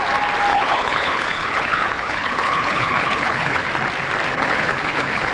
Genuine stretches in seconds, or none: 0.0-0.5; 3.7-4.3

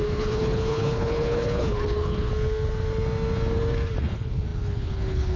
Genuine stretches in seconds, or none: 2.3-4.0

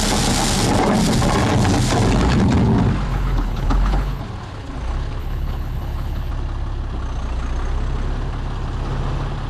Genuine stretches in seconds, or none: 0.0-3.1; 4.2-5.2; 6.3-9.5

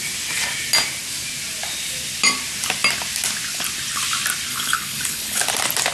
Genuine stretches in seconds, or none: 0.0-4.5; 5.4-5.9

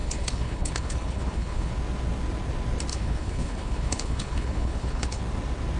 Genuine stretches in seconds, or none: 1.7-2.9; 5.2-5.8